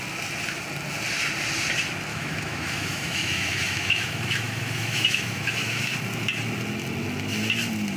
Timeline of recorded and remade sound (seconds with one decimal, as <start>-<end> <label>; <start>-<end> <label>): 0.0-2.1 recorded; 2.1-5.9 remade; 5.9-8.0 recorded